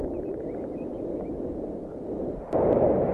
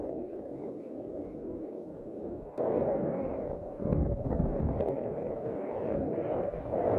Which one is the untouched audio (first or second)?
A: first